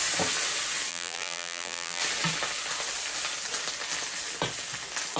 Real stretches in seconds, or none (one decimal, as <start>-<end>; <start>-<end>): 0.0-0.9; 2.0-5.2